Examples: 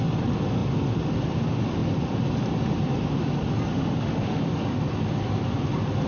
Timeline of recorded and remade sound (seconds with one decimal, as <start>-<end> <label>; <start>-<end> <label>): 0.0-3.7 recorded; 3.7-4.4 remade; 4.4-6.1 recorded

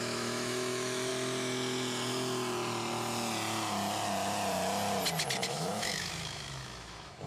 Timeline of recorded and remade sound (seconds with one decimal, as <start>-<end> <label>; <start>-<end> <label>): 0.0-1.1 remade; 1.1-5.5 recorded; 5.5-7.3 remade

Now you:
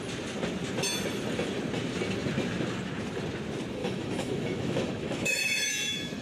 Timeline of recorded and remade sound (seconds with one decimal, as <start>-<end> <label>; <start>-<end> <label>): 0.0-3.8 recorded; 3.8-6.2 remade